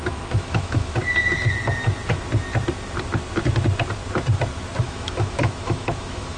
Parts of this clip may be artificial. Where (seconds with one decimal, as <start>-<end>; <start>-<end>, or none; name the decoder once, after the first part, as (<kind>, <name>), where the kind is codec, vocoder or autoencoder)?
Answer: 0.0-1.0 (autoencoder, DAC-VAE); 4.8-6.4